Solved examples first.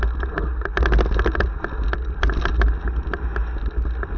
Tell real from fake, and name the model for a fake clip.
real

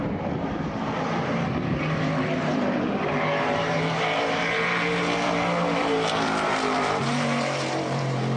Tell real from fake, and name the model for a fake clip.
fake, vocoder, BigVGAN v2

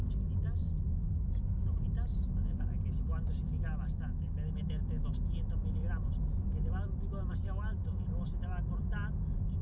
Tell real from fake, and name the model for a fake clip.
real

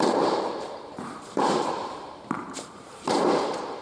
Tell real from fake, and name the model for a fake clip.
fake, vocoder, BigVGAN v2